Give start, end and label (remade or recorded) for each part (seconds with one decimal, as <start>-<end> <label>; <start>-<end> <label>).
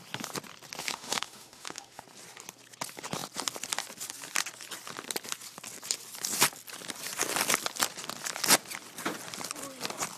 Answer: 0.0-0.8 recorded; 0.8-2.0 remade; 2.0-10.2 recorded